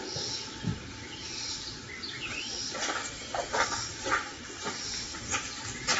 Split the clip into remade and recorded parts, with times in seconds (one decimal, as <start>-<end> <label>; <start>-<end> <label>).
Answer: 0.0-0.7 recorded; 0.7-2.7 remade; 2.7-6.0 recorded